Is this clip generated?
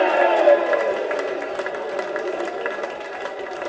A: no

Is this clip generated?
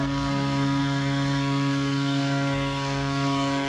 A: yes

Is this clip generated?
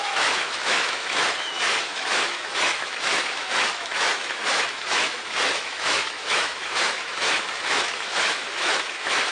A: yes